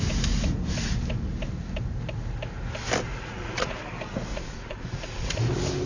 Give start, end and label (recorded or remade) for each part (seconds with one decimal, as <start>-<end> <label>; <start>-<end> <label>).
0.0-3.1 recorded; 3.1-3.8 remade; 3.8-4.3 recorded; 4.3-5.4 remade; 5.4-5.9 recorded